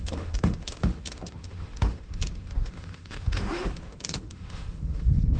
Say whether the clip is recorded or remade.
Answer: remade